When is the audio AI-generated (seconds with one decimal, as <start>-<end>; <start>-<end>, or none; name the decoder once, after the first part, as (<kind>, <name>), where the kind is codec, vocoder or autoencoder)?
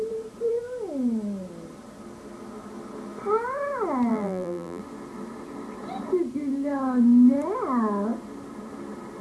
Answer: 4.1-4.8 (vocoder, BigVGAN v2)